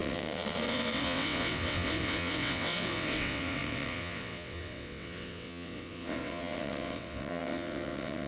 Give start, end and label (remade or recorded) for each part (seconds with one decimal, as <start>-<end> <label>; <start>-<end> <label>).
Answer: 0.0-8.3 remade